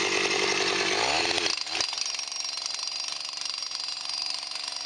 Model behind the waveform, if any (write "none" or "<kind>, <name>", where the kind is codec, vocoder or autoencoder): none